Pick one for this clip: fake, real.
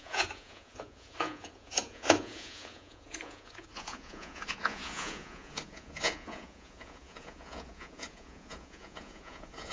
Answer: fake